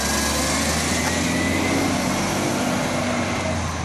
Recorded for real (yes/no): yes